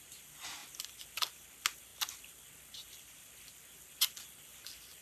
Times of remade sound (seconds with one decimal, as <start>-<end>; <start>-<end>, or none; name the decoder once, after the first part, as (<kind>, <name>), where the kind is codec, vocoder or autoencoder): none